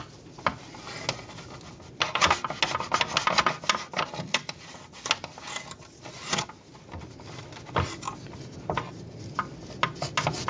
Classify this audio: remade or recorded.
recorded